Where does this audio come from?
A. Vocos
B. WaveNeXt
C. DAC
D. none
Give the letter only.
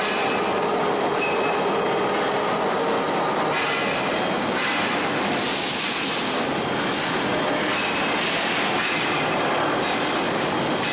D